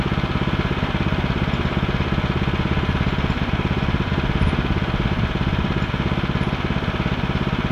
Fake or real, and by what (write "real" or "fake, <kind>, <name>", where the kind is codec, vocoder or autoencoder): real